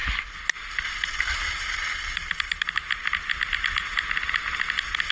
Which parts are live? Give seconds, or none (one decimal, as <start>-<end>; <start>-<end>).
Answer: 0.0-5.1